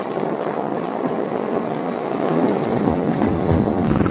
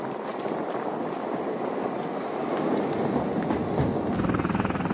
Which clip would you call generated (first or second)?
first